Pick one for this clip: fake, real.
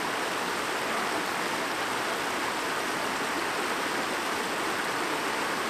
real